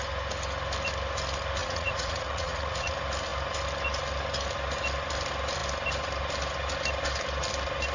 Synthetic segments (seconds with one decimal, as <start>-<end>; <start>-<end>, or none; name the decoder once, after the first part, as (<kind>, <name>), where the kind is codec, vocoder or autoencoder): 1.6-2.9 (vocoder, Vocos)